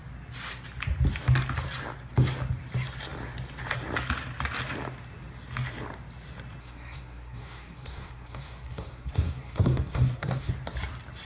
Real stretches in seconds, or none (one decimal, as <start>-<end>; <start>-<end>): 0.0-6.6; 10.5-11.2